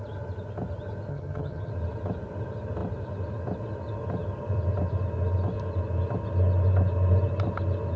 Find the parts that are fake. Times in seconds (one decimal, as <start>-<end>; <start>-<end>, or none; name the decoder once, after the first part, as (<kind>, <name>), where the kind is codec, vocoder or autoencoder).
1.1-1.7 (vocoder, HiFi-GAN)